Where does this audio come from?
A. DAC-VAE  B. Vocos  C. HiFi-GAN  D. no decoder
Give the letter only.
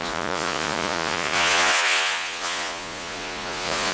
B